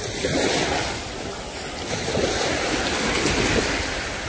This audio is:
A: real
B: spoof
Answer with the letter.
A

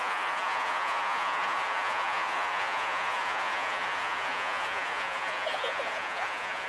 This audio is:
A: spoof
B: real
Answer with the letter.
A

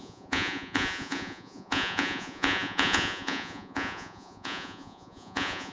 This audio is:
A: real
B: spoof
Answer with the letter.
B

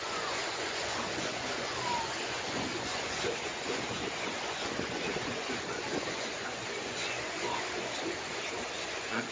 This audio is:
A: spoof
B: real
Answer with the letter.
A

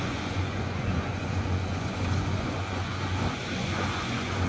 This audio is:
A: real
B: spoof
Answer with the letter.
B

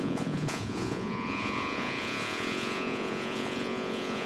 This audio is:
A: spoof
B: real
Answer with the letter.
A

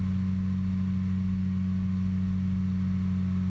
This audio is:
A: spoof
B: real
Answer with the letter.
B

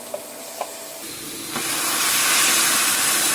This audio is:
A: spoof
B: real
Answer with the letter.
B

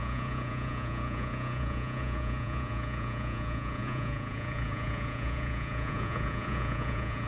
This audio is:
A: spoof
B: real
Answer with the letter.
A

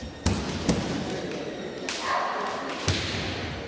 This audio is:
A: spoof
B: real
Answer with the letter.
B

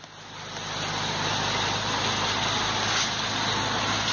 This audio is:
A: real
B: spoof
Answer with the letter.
A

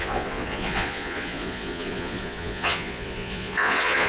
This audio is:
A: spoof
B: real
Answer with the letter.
A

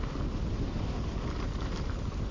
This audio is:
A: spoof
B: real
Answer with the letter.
B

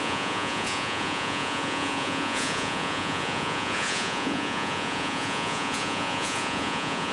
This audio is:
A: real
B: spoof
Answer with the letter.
B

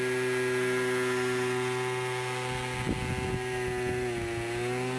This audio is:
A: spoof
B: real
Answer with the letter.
B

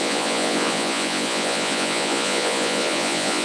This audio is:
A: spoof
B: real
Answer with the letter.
A